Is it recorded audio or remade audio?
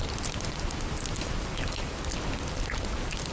recorded